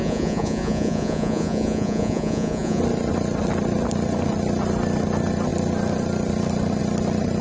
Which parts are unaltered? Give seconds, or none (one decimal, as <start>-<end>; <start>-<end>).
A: 2.8-7.4